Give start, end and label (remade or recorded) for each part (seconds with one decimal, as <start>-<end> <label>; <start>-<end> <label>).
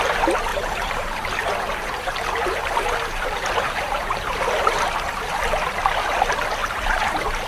0.0-0.5 recorded; 0.5-4.4 remade; 4.4-6.6 recorded; 6.6-7.5 remade